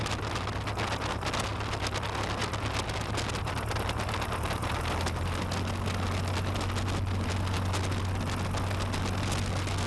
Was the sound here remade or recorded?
recorded